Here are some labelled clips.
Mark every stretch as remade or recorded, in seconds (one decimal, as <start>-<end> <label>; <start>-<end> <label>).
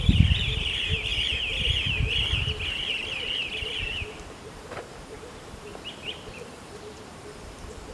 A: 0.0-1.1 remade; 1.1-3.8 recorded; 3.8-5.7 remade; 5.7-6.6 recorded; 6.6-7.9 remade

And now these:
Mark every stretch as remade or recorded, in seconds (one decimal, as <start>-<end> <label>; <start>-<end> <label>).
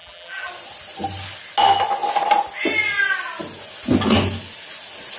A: 0.0-0.5 remade; 0.5-5.2 recorded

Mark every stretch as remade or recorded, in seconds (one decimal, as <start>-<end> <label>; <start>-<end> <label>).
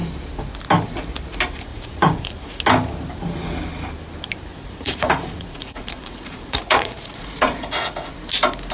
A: 0.0-1.7 recorded; 1.7-2.6 remade; 2.6-4.5 recorded; 4.5-8.1 remade; 8.1-8.7 recorded